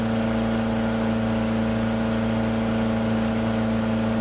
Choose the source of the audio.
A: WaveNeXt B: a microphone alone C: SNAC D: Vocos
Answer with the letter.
B